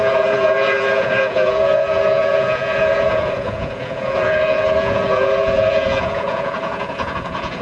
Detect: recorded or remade remade